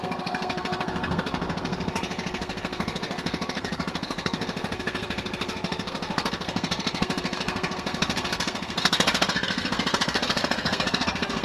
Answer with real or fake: fake